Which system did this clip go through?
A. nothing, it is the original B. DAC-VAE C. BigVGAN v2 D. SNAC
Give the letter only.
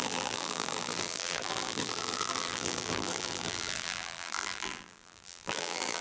C